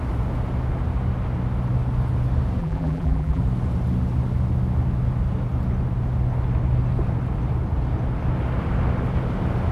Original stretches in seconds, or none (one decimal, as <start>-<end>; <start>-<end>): 0.0-2.6; 3.4-9.7